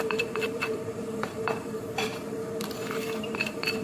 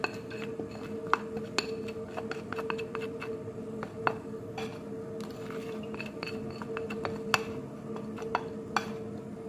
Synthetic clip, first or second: first